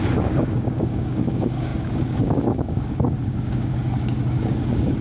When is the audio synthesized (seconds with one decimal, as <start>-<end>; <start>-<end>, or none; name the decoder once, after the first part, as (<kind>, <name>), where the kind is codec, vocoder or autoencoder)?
0.0-5.0 (codec, DAC)